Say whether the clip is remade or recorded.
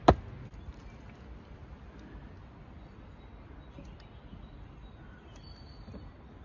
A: recorded